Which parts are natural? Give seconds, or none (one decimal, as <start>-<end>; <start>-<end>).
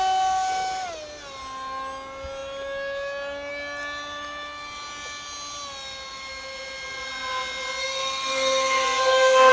0.0-7.8